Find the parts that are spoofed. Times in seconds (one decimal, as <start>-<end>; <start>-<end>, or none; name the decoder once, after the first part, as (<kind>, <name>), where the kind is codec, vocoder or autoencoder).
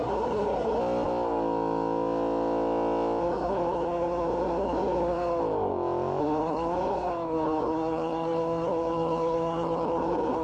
0.0-0.8 (codec, SNAC); 3.2-5.4; 6.2-10.4